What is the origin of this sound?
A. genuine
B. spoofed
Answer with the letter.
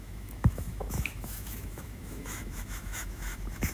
B